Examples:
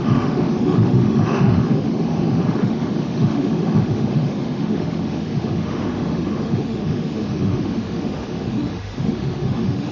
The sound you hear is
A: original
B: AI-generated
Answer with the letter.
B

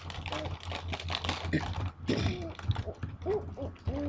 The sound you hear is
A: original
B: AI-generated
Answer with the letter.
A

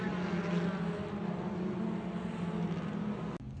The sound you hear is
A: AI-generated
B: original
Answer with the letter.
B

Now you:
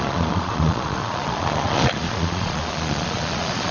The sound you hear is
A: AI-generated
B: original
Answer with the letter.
A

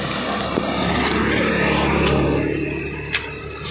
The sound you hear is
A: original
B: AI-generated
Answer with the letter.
A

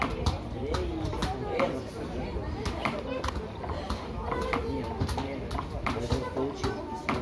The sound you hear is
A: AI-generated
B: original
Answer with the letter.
B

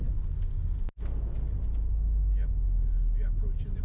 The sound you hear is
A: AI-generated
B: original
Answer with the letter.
B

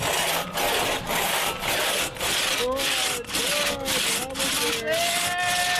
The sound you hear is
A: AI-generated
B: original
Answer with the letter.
B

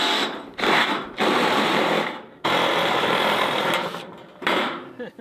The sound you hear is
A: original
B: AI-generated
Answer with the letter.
B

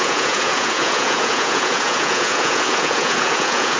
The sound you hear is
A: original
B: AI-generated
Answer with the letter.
B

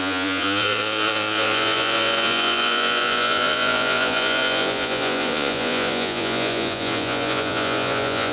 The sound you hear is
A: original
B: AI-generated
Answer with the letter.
B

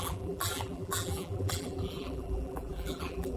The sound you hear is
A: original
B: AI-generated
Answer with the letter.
B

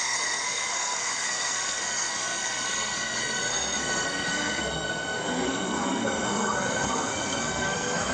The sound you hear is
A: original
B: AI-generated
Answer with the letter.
B